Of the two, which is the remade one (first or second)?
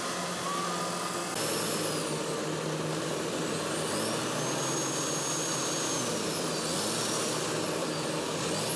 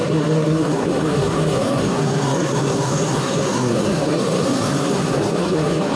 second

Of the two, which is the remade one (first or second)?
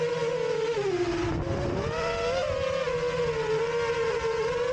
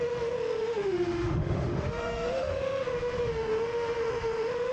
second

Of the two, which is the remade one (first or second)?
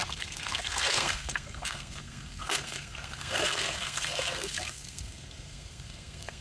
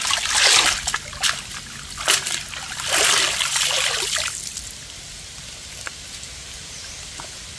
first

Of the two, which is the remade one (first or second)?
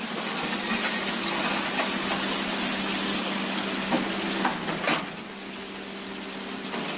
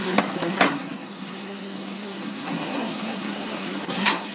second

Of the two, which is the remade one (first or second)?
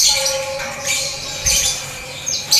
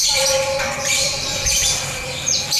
second